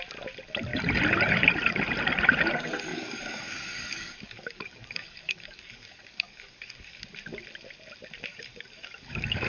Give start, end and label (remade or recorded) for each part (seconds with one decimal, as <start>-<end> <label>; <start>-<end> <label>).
0.0-2.9 recorded; 2.9-7.0 remade; 7.0-8.3 recorded; 8.3-9.5 remade

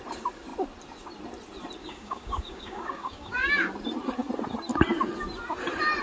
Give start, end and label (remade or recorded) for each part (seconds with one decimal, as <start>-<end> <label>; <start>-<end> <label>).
0.0-1.8 recorded; 1.8-3.7 remade; 3.7-6.0 recorded

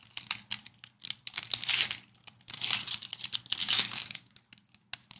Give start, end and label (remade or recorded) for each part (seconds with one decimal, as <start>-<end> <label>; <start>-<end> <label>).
0.0-3.6 recorded; 3.6-4.3 remade; 4.3-5.2 recorded

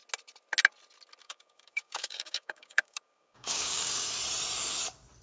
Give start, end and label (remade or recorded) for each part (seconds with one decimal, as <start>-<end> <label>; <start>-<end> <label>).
0.0-1.2 recorded; 1.2-4.0 remade; 4.0-5.2 recorded

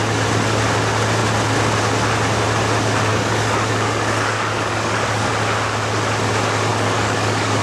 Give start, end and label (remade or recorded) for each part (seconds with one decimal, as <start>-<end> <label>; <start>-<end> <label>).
0.0-3.1 recorded; 3.1-5.3 remade; 5.3-6.7 recorded; 6.7-7.6 remade